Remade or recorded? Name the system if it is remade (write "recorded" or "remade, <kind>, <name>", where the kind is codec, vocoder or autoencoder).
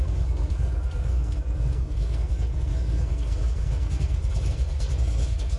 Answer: remade, codec, SNAC